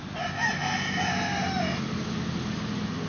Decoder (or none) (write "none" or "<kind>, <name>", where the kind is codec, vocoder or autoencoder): none